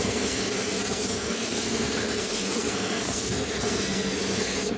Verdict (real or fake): fake